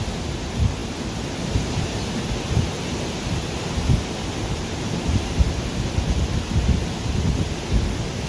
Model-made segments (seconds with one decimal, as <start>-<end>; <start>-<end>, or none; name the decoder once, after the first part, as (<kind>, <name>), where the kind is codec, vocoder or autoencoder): none